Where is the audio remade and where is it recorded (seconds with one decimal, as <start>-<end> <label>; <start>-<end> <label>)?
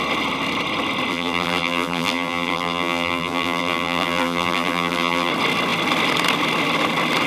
0.0-1.1 recorded; 1.1-5.3 remade; 5.3-7.3 recorded